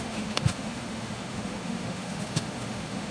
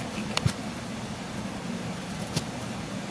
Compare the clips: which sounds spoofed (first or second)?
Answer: first